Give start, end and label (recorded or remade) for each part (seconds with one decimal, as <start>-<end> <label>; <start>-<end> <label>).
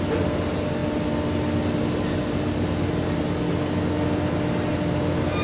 0.0-5.4 recorded